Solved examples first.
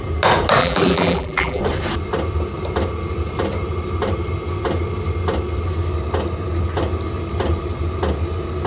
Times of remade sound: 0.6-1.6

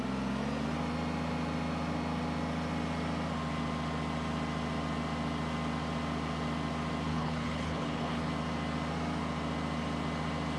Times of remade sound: 7.1-8.3

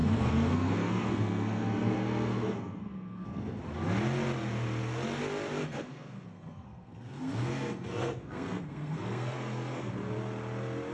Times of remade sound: 0.0-3.6; 5.6-9.9

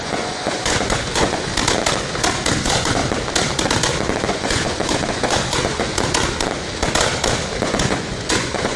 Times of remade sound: 0.0-1.5; 2.6-3.0; 4.3-5.9; 7.6-8.8

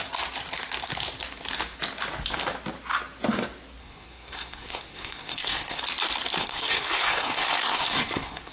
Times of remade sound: 3.8-5.8; 6.4-8.5

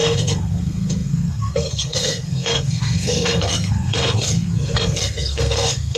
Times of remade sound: 0.0-6.0

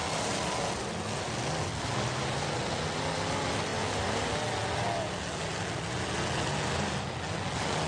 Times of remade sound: none